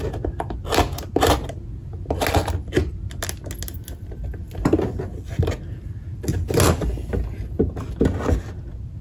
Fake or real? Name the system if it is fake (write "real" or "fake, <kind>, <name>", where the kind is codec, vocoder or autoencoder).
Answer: real